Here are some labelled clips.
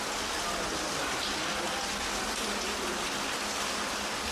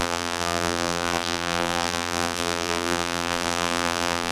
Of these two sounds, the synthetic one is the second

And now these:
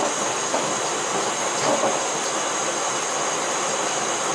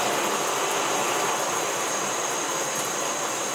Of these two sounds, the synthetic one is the second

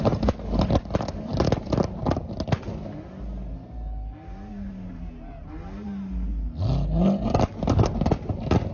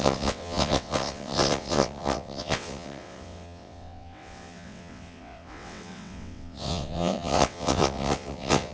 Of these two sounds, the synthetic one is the second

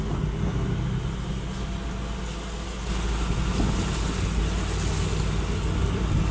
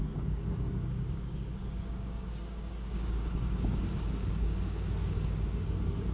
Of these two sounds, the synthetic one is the second